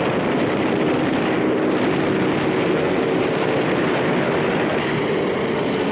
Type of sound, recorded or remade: recorded